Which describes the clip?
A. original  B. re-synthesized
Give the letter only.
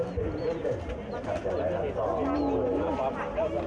A